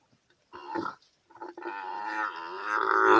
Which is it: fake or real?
real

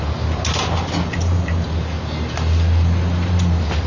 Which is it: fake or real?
real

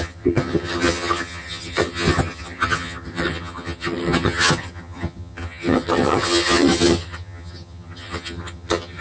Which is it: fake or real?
fake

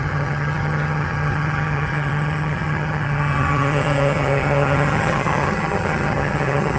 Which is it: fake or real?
fake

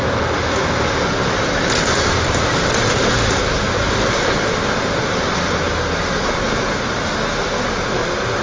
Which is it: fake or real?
real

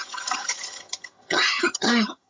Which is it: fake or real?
fake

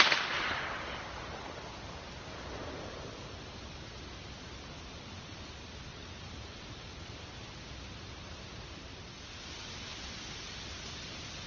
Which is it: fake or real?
real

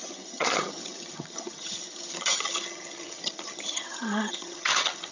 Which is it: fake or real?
fake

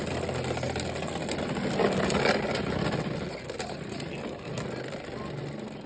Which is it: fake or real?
real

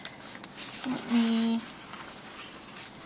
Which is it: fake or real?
real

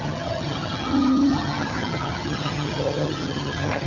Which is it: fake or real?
fake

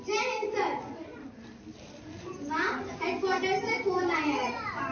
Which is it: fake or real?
real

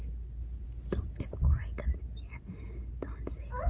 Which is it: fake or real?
real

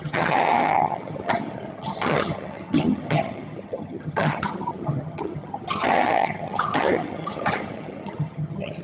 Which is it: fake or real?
fake